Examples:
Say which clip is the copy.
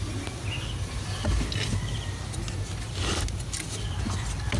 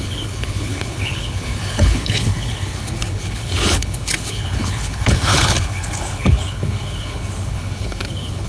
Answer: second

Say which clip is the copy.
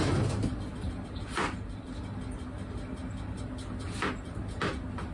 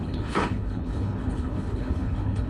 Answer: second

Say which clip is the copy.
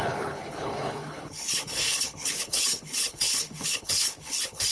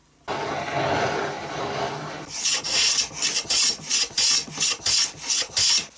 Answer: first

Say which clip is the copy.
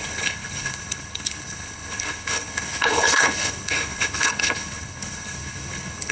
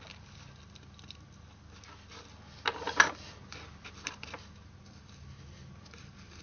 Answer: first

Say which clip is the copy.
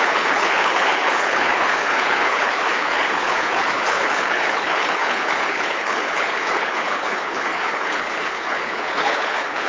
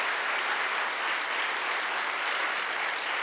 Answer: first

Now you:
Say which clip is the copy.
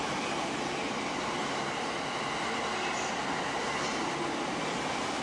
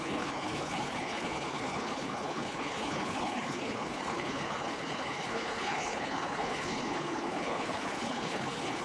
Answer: second